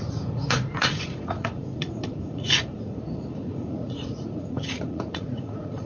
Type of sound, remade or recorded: remade